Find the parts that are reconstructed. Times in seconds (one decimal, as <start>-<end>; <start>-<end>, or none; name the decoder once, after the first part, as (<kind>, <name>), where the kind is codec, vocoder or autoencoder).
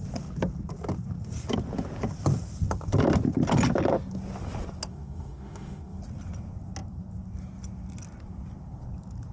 4.9-6.0 (autoencoder, DAC-VAE)